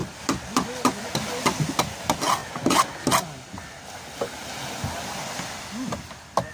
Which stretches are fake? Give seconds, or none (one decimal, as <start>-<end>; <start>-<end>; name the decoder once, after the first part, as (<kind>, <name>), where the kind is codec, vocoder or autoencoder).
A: 0.0-1.0 (vocoder, BigVGAN v2)